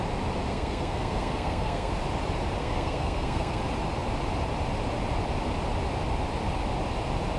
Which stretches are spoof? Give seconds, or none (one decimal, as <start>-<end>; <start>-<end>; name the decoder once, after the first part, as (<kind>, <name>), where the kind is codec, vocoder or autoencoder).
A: 0.5-1.9 (codec, SNAC); 2.6-3.6